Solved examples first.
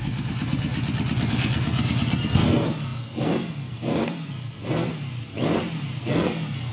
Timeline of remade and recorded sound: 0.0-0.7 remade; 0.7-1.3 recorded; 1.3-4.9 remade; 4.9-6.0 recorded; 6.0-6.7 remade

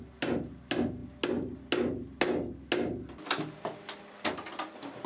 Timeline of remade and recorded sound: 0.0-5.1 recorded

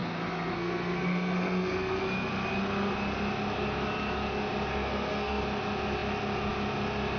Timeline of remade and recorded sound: 0.0-2.0 remade; 2.0-4.7 recorded; 4.7-5.4 remade; 5.4-7.2 recorded

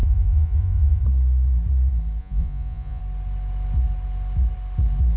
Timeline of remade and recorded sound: 0.0-1.0 remade; 1.0-2.2 recorded; 2.2-3.0 remade; 3.0-5.2 recorded

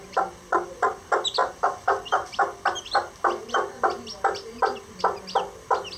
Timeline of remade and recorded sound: 0.0-6.0 recorded

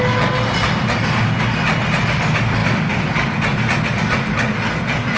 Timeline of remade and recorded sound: 0.0-5.2 recorded